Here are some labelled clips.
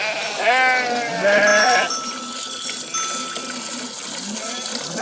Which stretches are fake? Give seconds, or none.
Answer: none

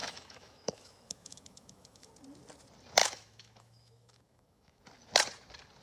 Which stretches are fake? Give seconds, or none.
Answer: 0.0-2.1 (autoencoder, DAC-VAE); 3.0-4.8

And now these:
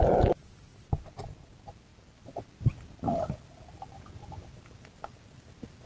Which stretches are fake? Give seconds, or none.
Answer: none

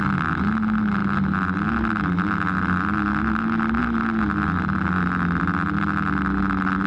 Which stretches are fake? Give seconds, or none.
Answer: none

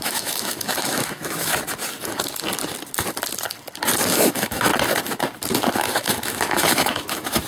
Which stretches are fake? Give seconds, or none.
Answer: 0.0-1.5 (autoencoder, DAC-VAE); 4.1-4.7; 5.7-7.5